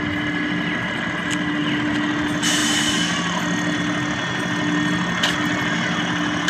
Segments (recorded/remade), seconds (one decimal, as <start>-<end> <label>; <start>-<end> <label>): 0.0-6.5 recorded